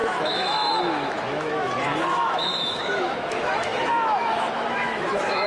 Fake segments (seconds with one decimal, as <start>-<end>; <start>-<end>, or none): 0.0-5.5